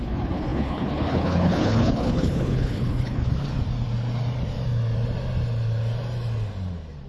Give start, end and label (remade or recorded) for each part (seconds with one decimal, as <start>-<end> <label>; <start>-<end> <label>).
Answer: 0.0-3.3 remade; 3.3-7.1 recorded